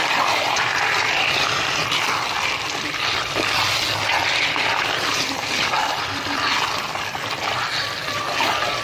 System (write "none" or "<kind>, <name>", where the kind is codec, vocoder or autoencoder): none